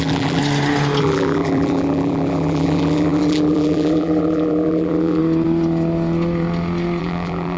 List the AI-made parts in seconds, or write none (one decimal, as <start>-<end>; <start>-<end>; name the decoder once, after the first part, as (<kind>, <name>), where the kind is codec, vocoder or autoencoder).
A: 0.0-0.4 (vocoder, BigVGAN v2); 1.0-5.2; 7.0-7.6